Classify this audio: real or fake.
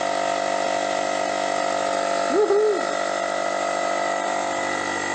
real